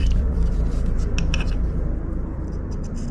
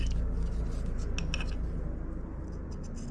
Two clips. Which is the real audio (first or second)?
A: second